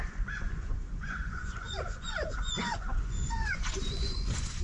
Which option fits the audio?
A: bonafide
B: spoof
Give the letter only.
B